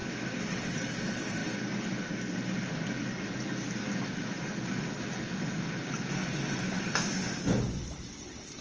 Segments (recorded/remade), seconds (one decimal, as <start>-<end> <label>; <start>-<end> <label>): 0.0-0.9 recorded; 0.9-1.4 remade; 1.4-6.6 recorded; 6.6-8.6 remade